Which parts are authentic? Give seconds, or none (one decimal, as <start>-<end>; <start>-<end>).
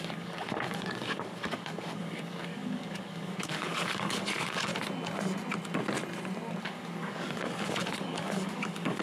4.7-6.6